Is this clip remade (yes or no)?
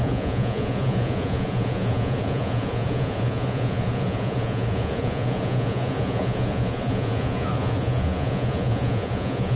yes